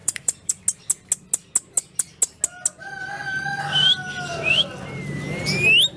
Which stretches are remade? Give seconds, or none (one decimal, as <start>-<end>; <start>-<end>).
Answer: 0.0-0.6